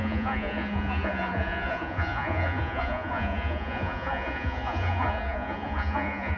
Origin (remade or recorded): remade